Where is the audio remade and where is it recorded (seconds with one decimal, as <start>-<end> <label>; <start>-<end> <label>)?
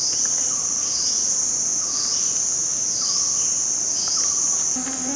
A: 0.0-5.2 recorded